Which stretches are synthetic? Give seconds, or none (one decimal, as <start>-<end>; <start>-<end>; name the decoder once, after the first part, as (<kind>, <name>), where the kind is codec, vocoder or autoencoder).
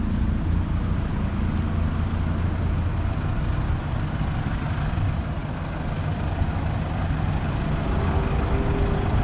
none